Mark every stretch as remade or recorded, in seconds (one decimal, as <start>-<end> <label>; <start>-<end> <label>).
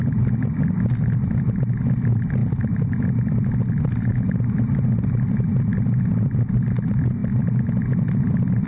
0.0-4.1 remade; 4.1-4.8 recorded; 4.8-7.2 remade; 7.2-8.2 recorded; 8.2-8.7 remade